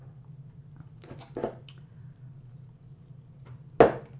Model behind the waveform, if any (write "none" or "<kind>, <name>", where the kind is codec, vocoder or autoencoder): none